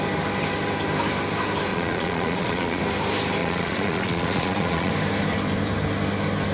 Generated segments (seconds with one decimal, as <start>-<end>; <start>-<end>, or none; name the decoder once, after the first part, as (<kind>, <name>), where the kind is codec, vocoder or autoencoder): 1.7-2.8 (vocoder, Vocos); 3.4-4.9